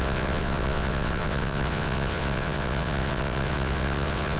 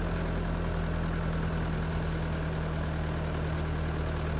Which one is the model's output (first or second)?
first